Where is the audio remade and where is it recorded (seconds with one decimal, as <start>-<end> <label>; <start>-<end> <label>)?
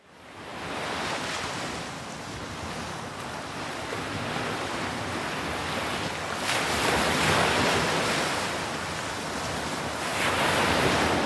0.0-10.1 recorded; 10.1-10.9 remade; 10.9-11.3 recorded